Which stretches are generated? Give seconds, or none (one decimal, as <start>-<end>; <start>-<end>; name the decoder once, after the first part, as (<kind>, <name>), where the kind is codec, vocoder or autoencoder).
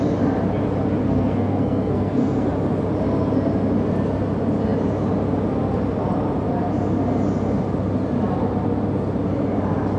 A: 1.0-2.5 (codec, SNAC)